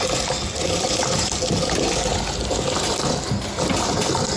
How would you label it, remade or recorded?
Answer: recorded